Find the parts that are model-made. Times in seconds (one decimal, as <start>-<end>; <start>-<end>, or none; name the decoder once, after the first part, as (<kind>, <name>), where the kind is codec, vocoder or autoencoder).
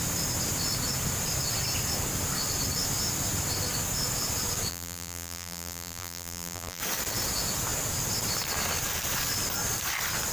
4.7-6.8 (vocoder, BigVGAN v2)